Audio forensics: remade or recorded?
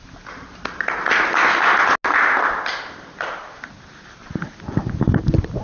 recorded